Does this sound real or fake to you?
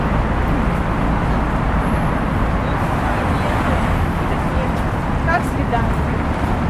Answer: real